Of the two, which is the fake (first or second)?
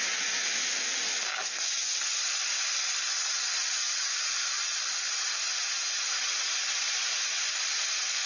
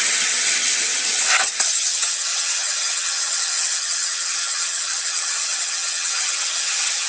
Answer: second